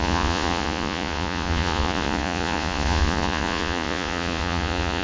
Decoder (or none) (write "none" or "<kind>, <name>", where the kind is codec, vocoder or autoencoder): vocoder, Vocos